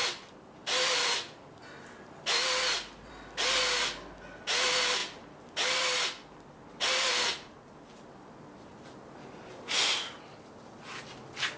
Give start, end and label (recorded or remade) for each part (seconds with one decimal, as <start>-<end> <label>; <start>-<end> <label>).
0.0-11.6 recorded